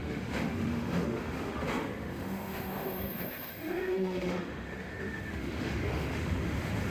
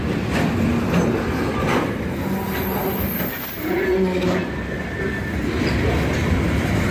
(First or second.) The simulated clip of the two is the first